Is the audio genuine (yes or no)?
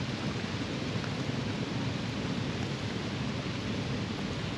yes